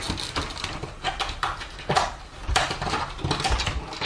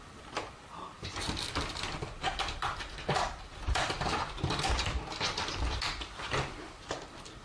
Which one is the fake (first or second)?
second